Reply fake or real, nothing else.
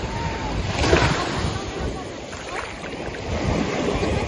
real